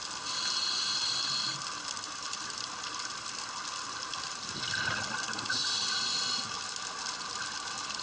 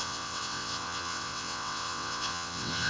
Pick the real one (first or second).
first